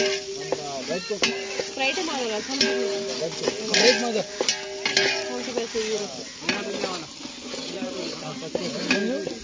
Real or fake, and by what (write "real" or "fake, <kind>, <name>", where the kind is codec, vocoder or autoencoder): real